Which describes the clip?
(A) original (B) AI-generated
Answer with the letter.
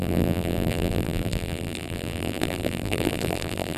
B